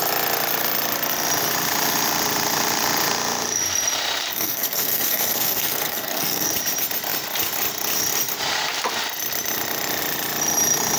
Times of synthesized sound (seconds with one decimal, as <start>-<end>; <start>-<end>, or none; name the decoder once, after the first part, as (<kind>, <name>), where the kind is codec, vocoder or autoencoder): 4.3-6.5 (codec, SNAC)